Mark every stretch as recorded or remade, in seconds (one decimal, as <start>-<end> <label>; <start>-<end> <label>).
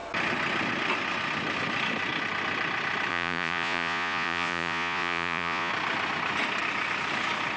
0.0-3.1 recorded; 3.1-5.7 remade; 5.7-7.6 recorded